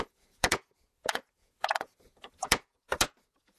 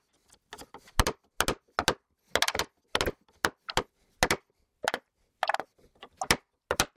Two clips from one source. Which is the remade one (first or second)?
first